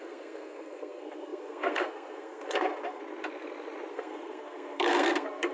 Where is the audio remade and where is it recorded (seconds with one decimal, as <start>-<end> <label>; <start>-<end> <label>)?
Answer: 0.0-3.0 remade; 3.0-3.9 recorded; 3.9-5.5 remade